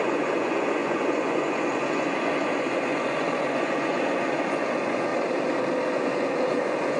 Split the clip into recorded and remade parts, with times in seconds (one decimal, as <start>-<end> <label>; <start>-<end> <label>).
0.0-5.1 remade; 5.1-5.9 recorded; 5.9-7.0 remade